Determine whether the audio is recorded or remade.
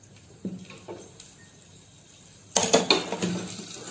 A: recorded